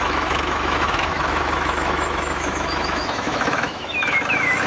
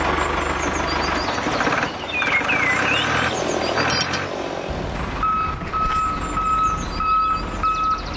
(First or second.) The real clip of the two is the second